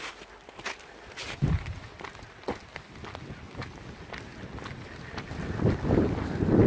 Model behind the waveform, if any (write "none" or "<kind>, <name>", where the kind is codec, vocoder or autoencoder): none